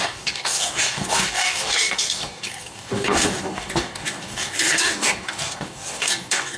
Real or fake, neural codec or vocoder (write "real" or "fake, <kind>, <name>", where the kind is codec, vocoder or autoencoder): fake, codec, DAC